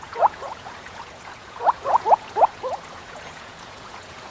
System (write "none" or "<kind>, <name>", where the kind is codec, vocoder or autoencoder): vocoder, Vocos